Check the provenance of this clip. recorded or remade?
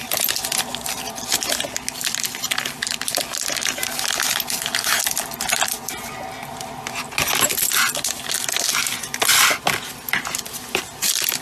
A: recorded